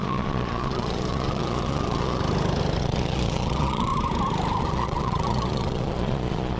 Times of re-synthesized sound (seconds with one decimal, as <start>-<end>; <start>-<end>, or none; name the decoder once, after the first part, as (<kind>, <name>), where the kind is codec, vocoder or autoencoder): 0.0-2.2 (vocoder, Vocos); 2.8-3.9; 4.6-6.6